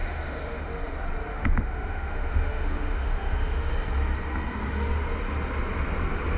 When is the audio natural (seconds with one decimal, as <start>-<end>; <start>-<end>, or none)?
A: 0.7-1.3; 3.7-6.4